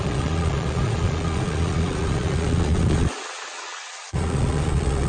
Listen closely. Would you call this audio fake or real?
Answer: fake